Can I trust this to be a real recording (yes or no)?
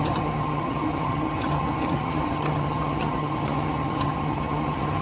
no